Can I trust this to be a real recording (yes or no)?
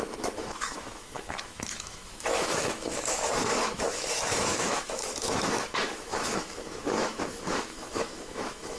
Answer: no